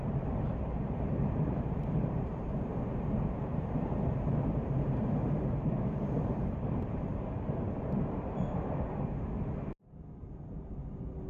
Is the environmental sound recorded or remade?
remade